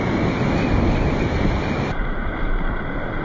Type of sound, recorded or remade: recorded